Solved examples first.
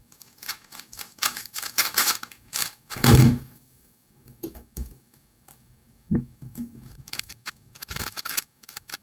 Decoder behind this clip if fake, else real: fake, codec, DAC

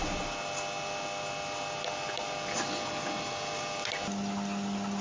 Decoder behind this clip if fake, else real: real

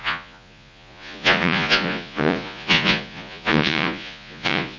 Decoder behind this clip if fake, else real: fake, vocoder, Vocos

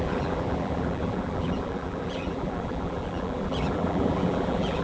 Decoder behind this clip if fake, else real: fake, vocoder, BigVGAN v2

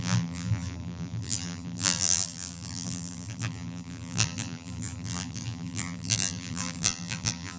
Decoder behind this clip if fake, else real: fake, vocoder, BigVGAN v2